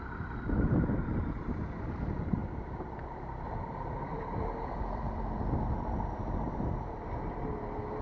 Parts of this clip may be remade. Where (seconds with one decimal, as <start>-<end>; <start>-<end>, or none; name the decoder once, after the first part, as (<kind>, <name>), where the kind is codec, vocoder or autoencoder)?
2.4-7.2 (vocoder, BigVGAN v2)